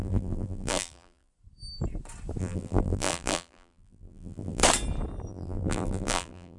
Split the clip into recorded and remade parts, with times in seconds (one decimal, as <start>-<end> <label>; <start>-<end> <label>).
0.0-1.3 remade; 1.3-2.4 recorded; 2.4-4.6 remade; 4.6-5.3 recorded; 5.3-6.6 remade

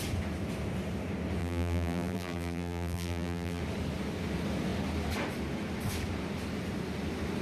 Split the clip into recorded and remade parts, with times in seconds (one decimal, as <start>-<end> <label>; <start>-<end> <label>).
0.0-1.4 recorded; 1.4-3.6 remade; 3.6-7.4 recorded

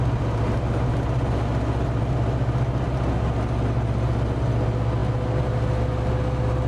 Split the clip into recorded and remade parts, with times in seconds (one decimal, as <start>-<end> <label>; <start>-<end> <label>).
0.0-6.7 recorded

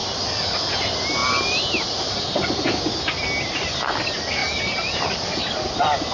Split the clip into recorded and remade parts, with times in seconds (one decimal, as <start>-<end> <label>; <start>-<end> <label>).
0.0-0.7 remade; 0.7-1.2 recorded; 1.2-2.9 remade; 2.9-4.4 recorded; 4.4-5.4 remade; 5.4-6.1 recorded

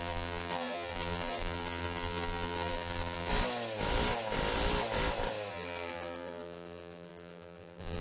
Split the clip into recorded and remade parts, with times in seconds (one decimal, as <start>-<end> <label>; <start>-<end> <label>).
0.0-3.3 remade; 3.3-5.5 recorded; 5.5-8.0 remade

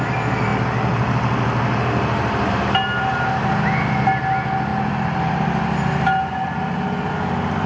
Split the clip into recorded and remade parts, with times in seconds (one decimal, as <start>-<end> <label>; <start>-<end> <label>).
0.0-4.7 recorded; 4.7-7.1 remade; 7.1-7.7 recorded

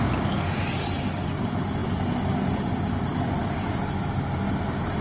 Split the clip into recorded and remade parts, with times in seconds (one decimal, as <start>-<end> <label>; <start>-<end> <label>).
0.0-5.0 recorded

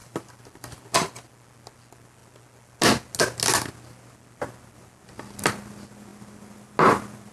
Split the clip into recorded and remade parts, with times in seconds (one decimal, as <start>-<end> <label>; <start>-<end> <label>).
0.0-1.3 remade; 1.3-7.3 recorded